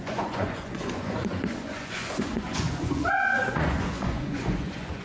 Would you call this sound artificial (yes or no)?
yes